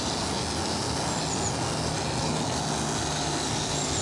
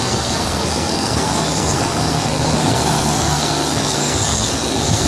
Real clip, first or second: first